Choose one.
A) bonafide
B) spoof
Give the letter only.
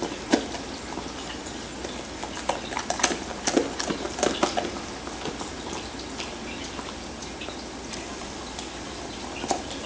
A